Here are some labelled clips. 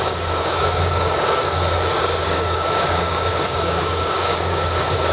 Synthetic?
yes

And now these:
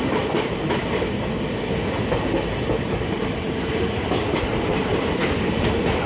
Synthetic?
no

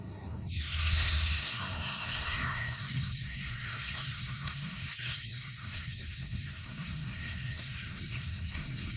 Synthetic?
yes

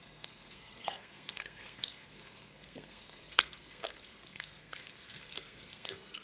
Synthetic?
yes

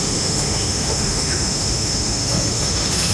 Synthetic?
yes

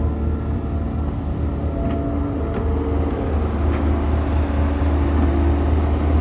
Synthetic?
no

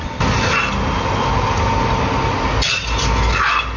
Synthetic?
no